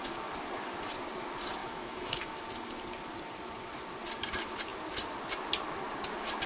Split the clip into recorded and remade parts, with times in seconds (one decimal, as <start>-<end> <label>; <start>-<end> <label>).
0.0-1.6 recorded; 1.6-2.2 remade; 2.2-6.5 recorded